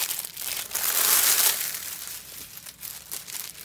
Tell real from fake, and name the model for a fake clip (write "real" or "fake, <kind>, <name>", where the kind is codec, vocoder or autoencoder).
real